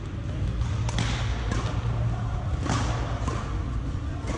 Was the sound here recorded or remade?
recorded